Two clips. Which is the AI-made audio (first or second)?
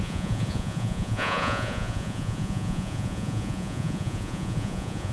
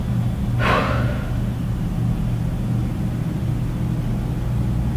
first